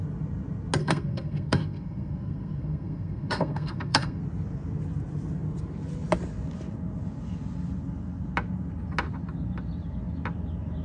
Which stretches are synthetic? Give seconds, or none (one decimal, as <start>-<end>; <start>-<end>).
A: 0.8-4.2